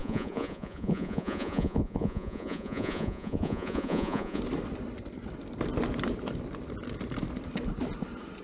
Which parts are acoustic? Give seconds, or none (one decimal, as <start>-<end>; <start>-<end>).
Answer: 4.4-8.4